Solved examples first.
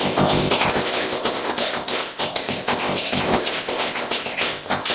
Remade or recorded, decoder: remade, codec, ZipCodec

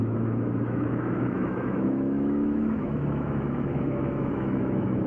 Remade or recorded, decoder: remade, autoencoder, DAC-VAE